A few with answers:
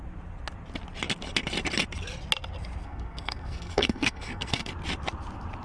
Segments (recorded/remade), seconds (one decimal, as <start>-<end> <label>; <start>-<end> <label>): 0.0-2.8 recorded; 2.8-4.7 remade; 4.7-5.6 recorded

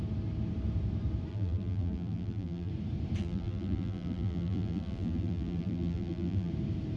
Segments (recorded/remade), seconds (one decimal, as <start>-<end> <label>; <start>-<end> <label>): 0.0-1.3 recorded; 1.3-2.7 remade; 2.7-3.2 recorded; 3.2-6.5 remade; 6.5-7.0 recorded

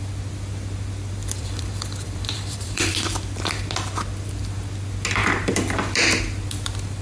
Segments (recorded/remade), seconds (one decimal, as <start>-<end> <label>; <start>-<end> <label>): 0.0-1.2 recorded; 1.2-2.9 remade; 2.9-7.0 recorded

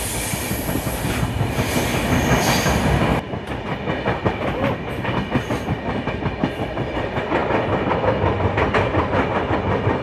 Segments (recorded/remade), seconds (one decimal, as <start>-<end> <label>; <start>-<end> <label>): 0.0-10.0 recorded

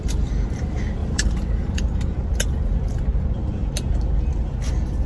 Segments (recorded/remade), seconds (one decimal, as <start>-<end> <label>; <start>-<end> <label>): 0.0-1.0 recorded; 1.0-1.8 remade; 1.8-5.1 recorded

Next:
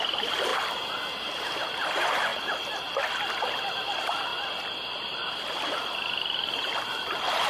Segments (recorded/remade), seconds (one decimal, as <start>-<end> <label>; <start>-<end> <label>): 0.0-7.5 recorded